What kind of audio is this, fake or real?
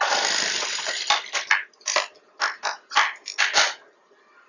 real